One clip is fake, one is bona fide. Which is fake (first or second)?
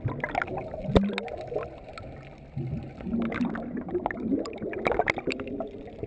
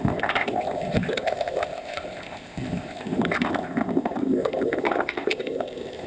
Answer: second